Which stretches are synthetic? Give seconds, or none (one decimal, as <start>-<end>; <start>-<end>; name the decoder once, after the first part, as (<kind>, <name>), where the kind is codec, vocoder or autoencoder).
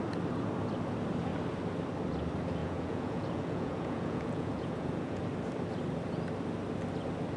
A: 2.6-5.2 (vocoder, Vocos)